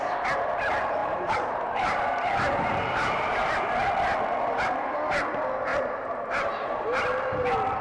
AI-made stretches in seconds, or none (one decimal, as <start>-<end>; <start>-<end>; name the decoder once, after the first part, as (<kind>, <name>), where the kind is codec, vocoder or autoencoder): 1.0-3.7 (vocoder, BigVGAN v2); 5.7-7.0